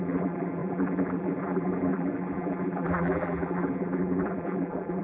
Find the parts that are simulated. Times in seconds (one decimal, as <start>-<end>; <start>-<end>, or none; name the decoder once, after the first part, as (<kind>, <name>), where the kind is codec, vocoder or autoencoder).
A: 0.0-5.0 (vocoder, BigVGAN v2)